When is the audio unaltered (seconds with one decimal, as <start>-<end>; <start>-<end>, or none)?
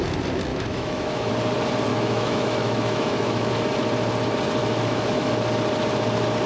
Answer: 0.0-0.5; 1.3-1.9; 3.5-4.6; 5.3-6.5